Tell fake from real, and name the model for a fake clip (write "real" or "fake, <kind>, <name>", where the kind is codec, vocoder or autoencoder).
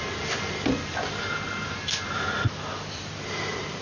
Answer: real